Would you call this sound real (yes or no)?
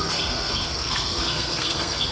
no